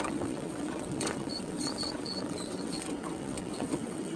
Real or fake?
fake